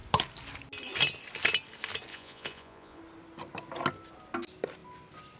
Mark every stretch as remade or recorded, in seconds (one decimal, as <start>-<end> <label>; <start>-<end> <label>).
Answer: 0.0-2.1 recorded; 2.1-3.0 remade; 3.0-5.4 recorded